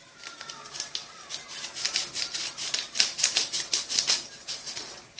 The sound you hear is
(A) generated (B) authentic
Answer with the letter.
B